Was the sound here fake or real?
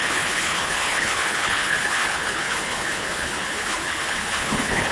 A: fake